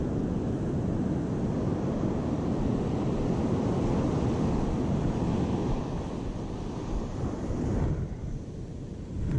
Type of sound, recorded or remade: recorded